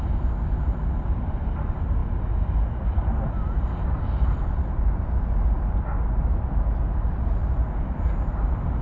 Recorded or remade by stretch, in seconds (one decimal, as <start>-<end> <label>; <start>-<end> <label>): 0.0-8.8 recorded